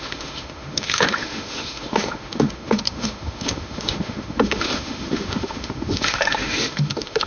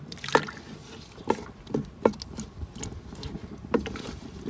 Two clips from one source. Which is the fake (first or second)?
first